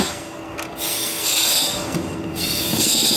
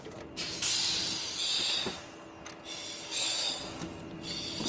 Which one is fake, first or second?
first